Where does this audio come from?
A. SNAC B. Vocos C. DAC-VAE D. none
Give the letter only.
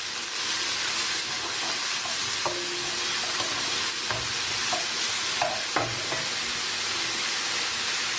D